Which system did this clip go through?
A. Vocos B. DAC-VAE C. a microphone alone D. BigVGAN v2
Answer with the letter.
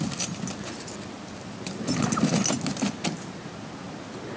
C